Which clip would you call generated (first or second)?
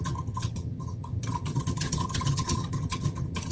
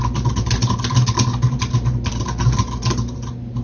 first